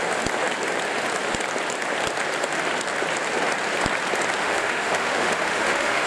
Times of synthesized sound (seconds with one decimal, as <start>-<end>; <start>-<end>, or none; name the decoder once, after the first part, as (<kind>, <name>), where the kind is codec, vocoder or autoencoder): 4.4-6.1 (autoencoder, DAC-VAE)